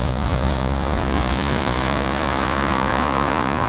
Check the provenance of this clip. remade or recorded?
remade